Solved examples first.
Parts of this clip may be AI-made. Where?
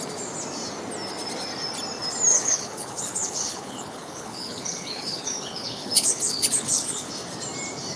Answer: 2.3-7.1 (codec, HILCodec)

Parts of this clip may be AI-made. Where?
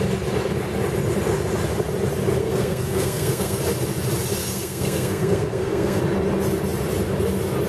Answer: 2.4-3.6 (codec, SNAC); 4.4-6.0